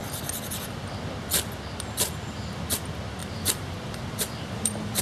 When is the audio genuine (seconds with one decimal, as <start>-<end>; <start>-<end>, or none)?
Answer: 0.0-3.2